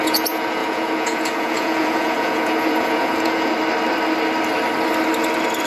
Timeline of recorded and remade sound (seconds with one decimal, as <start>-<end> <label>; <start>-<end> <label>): 0.0-3.5 remade; 3.5-5.7 recorded